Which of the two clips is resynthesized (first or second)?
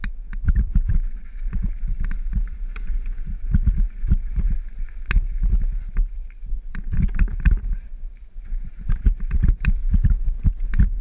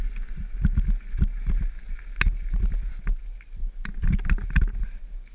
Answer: first